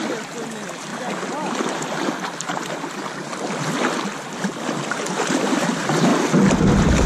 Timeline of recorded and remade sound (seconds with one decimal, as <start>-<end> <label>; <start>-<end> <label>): 0.0-7.1 recorded